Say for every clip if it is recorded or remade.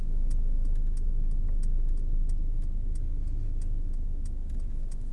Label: recorded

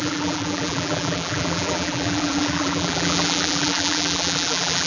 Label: remade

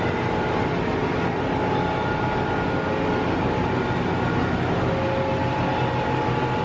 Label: recorded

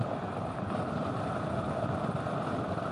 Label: recorded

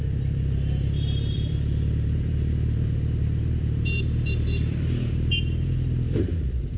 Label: remade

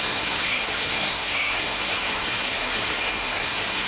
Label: remade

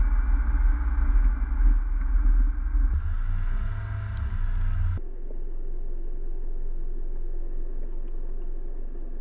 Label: recorded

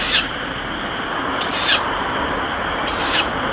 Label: recorded